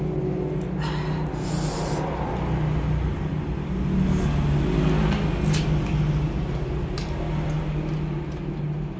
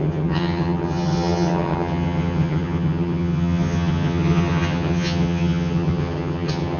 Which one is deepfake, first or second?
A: second